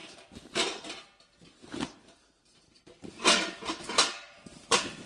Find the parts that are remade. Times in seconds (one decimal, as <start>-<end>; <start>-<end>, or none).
0.0-5.1